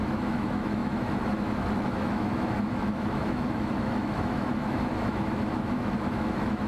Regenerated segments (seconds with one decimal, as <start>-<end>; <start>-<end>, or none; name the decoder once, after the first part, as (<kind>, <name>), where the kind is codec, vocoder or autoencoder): 0.0-6.7 (autoencoder, DAC-VAE)